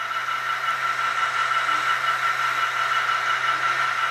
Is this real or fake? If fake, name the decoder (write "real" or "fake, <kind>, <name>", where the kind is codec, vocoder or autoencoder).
real